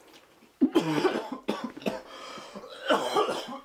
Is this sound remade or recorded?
recorded